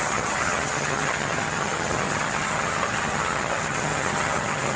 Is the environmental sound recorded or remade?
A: remade